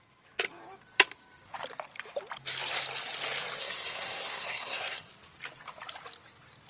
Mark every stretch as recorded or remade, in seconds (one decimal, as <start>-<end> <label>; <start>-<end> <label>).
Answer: 0.0-3.6 recorded; 3.6-5.1 remade; 5.1-6.7 recorded